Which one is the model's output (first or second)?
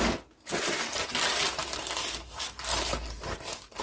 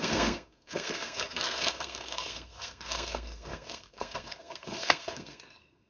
second